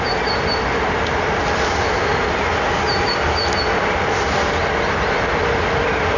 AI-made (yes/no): no